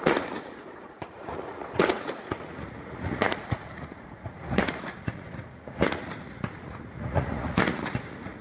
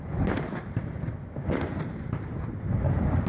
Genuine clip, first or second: second